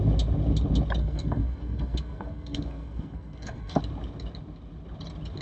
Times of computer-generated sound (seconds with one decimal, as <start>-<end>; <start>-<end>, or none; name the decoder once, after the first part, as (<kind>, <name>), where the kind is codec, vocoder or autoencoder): 1.0-3.8 (codec, SNAC)

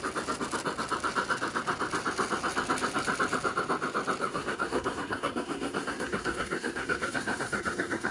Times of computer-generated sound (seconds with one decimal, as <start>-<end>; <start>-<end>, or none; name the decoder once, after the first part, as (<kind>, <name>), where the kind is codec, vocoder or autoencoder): 4.2-8.1 (codec, SNAC)

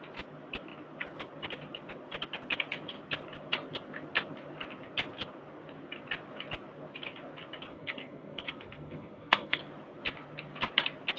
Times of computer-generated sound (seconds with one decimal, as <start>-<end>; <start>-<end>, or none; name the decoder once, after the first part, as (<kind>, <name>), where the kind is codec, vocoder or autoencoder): 7.7-9.6 (codec, SNAC)

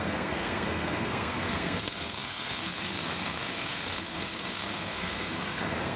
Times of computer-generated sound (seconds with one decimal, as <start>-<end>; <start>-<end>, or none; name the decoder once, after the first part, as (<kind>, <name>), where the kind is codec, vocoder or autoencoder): 0.0-6.0 (codec, SNAC)

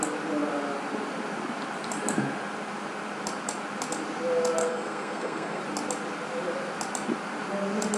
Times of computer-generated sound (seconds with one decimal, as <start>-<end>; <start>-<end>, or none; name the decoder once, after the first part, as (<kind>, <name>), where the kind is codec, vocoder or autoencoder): 4.6-5.6 (codec, SNAC)

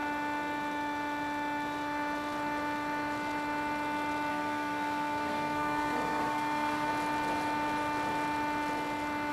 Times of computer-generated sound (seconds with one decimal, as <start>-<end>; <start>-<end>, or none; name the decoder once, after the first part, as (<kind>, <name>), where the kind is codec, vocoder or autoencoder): 4.3-6.9 (codec, SNAC)